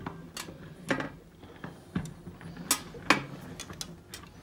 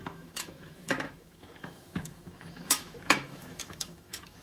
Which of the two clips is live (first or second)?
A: first